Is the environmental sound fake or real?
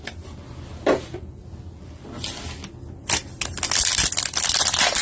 real